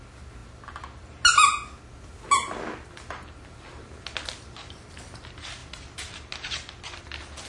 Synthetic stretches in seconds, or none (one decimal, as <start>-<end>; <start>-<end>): none